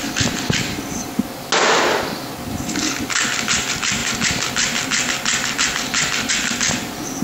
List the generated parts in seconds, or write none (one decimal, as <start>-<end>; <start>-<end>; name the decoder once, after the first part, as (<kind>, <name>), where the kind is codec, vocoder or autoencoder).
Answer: none